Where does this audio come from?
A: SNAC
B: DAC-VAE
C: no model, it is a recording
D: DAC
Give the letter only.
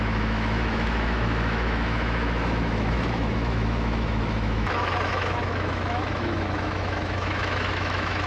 B